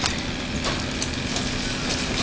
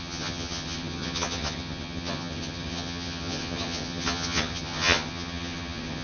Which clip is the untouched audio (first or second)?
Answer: first